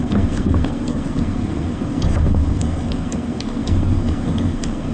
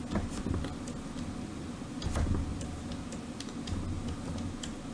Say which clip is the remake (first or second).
first